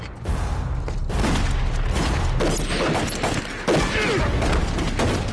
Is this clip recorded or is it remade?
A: recorded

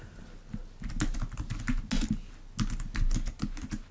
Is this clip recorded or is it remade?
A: recorded